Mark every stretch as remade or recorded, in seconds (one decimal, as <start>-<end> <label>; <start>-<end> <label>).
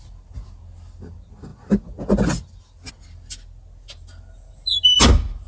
0.0-5.5 recorded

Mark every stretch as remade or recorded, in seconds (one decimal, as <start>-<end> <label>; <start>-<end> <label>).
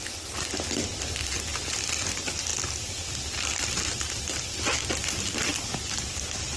0.0-0.9 remade; 0.9-1.7 recorded; 1.7-2.5 remade; 2.5-4.2 recorded; 4.2-6.6 remade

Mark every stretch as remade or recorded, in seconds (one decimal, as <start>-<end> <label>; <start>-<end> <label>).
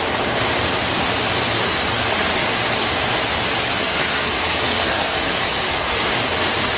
0.0-3.8 recorded; 3.8-6.0 remade; 6.0-6.8 recorded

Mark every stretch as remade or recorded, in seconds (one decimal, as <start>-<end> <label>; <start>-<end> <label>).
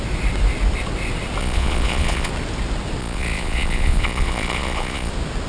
0.0-1.4 recorded; 1.4-2.3 remade; 2.3-3.0 recorded; 3.0-5.1 remade; 5.1-5.5 recorded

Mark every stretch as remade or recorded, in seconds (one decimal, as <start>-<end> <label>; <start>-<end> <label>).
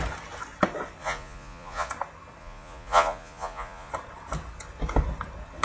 0.0-1.0 recorded; 1.0-1.9 remade; 1.9-2.4 recorded; 2.4-3.9 remade; 3.9-5.6 recorded